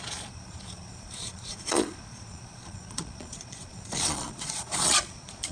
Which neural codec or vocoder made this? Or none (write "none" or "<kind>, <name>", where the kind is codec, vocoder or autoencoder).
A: vocoder, Vocos